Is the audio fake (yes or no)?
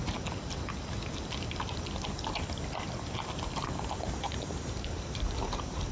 no